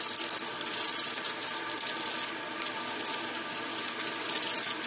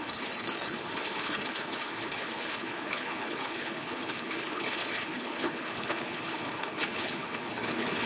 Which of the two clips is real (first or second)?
first